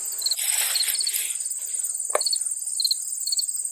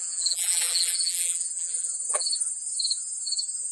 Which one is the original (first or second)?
first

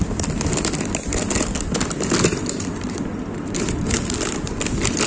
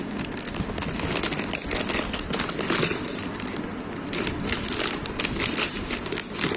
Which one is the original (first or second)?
second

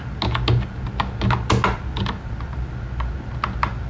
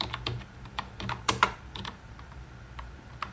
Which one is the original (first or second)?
first